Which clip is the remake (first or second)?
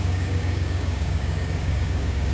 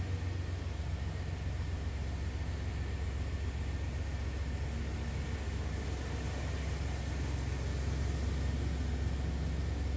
first